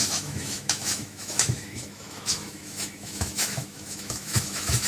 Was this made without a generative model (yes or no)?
no